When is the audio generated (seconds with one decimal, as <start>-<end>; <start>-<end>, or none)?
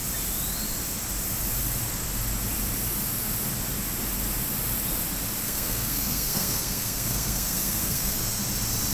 5.4-8.4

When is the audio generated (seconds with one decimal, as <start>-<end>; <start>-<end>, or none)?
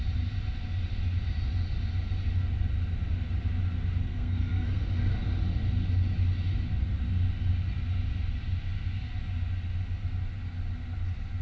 4.0-4.8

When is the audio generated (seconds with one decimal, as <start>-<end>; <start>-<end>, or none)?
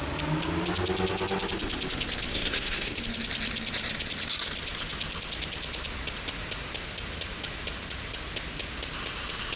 2.3-3.0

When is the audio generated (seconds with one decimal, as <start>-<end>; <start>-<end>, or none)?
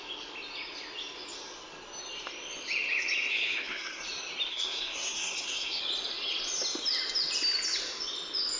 3.3-4.0; 4.5-5.8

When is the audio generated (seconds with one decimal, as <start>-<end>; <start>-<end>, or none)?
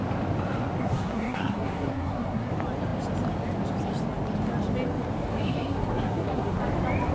0.8-2.5; 5.3-6.6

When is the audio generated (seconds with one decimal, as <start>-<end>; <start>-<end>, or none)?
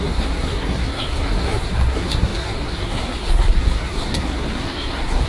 0.0-5.3